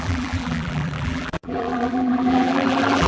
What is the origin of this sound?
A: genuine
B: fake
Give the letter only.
B